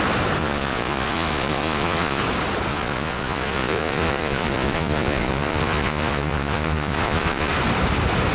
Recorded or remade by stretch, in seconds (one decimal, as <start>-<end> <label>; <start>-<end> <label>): 0.0-0.4 recorded; 0.4-2.2 remade; 2.2-2.7 recorded; 2.7-7.5 remade; 7.5-8.3 recorded